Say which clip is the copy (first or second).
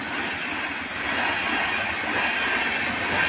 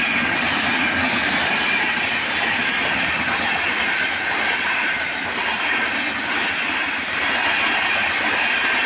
second